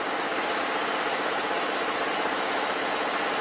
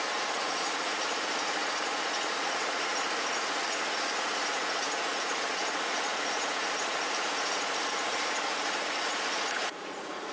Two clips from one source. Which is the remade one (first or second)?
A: second